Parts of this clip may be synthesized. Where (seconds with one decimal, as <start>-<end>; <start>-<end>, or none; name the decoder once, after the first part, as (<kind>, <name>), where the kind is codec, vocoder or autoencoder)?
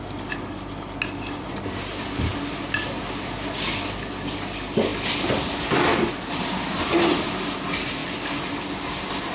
none